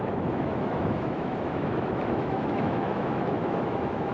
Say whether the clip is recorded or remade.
remade